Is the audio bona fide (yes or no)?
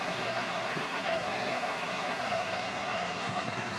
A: no